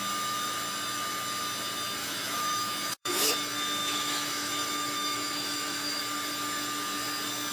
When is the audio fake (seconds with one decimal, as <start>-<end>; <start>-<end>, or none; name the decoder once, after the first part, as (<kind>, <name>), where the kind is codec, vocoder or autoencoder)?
2.0-3.3 (autoencoder, DAC-VAE); 3.8-6.0